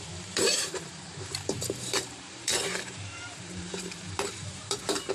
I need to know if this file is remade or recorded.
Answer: remade